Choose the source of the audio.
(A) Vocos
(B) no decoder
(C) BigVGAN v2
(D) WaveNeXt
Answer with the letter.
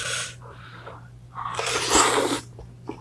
C